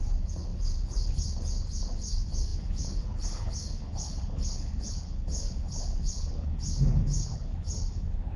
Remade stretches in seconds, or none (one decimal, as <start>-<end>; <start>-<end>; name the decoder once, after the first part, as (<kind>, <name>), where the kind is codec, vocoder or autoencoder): 0.0-8.4 (codec, HILCodec)